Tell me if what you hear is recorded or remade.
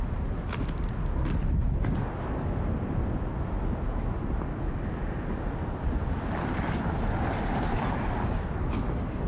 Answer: recorded